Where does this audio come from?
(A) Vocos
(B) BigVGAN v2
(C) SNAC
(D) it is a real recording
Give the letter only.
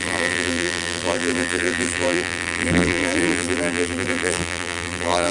B